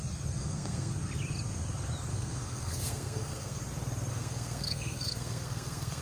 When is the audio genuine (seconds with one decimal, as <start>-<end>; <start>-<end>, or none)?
0.0-0.4; 0.9-2.1; 3.6-4.1